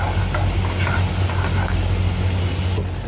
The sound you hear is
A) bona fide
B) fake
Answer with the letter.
A